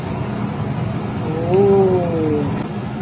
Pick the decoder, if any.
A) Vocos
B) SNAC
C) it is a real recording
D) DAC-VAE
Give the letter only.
C